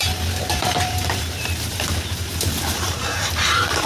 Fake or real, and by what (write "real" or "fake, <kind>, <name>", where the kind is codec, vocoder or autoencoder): fake, vocoder, BigVGAN v2